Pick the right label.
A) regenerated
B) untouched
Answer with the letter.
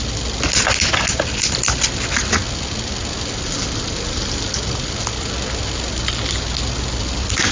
B